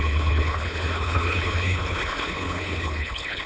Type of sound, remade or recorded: remade